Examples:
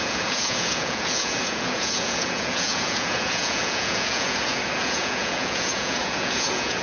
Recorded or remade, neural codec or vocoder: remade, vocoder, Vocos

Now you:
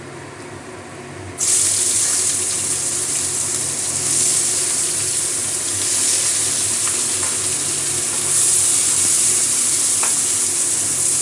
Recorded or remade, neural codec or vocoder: recorded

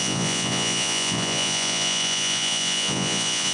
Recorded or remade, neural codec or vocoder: remade, vocoder, Vocos